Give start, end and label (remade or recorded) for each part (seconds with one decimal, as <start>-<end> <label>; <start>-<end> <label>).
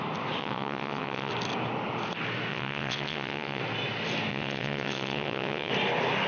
0.0-0.4 recorded; 0.4-1.3 remade; 1.3-2.5 recorded; 2.5-3.6 remade; 3.6-4.3 recorded; 4.3-5.7 remade; 5.7-6.3 recorded